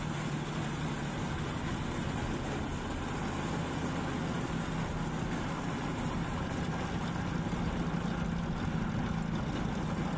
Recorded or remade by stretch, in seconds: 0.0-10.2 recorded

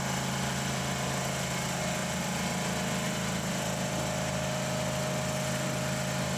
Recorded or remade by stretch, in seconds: 0.0-6.4 recorded

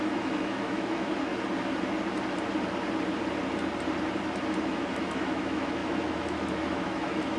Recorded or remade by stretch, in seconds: 0.0-1.3 remade; 1.3-4.6 recorded; 4.6-7.4 remade

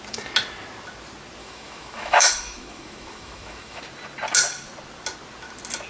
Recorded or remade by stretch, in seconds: 0.0-1.4 recorded; 1.4-3.8 remade; 3.8-5.9 recorded